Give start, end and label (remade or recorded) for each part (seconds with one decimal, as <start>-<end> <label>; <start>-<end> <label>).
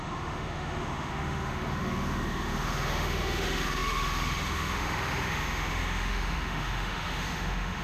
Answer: 0.0-7.8 remade